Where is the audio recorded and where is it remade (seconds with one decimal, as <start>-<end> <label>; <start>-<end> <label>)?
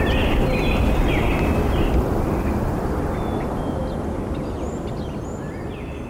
0.0-6.1 recorded